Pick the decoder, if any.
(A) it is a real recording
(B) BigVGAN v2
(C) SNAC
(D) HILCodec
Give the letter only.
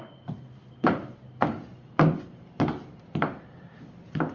A